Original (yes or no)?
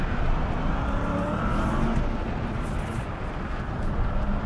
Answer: yes